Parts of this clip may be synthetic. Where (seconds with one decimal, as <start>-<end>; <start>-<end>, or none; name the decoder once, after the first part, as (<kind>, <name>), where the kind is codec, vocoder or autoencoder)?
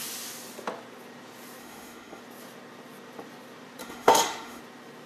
1.6-2.2 (autoencoder, DAC-VAE); 3.8-4.6